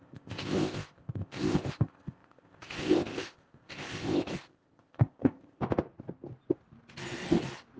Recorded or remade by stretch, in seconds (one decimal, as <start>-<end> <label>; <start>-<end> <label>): 0.0-5.6 remade; 5.6-7.8 recorded